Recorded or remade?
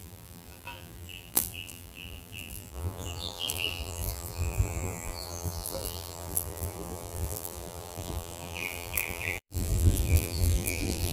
remade